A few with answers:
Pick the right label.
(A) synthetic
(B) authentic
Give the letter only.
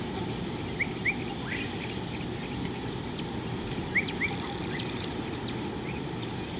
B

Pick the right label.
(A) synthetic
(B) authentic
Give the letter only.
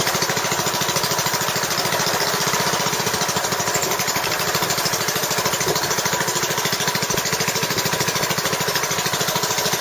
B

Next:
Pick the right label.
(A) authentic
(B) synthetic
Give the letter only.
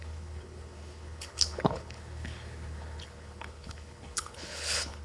B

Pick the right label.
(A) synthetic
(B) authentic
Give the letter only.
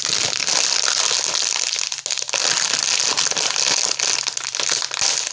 B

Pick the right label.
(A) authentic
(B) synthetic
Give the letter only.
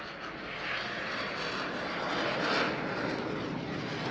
A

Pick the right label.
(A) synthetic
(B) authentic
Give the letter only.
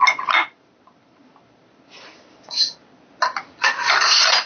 B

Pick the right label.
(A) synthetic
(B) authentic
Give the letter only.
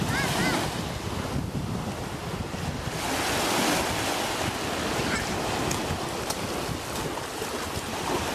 B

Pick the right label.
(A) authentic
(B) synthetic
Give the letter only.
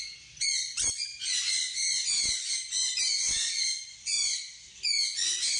A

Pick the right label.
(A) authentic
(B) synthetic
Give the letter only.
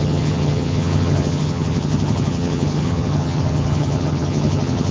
B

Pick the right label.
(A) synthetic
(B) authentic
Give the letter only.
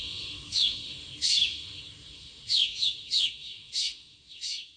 A